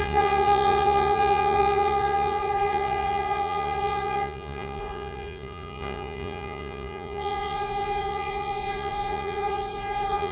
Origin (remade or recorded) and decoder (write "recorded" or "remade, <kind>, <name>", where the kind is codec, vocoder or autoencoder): remade, vocoder, Vocos